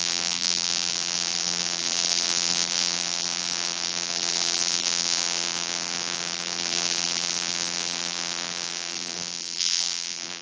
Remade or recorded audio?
remade